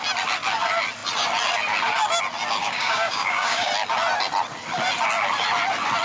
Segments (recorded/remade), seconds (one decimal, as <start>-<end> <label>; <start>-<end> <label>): 0.0-2.6 recorded; 2.6-3.7 remade; 3.7-6.0 recorded